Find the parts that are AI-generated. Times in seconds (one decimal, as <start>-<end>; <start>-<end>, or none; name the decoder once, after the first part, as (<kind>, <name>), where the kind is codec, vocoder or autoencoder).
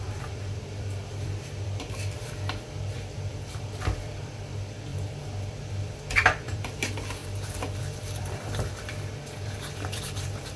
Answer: 0.0-7.2 (vocoder, BigVGAN v2); 7.8-10.6